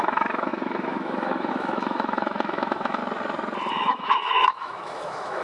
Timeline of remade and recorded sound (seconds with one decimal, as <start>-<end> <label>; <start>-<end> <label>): 0.0-3.0 remade; 3.0-3.7 recorded; 3.7-5.4 remade